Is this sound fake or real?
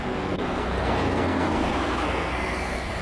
fake